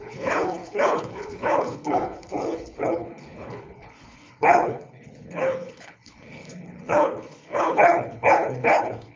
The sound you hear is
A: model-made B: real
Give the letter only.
A